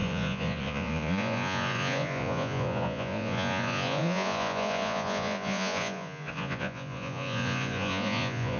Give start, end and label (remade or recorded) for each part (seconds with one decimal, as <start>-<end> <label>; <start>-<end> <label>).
0.0-8.6 remade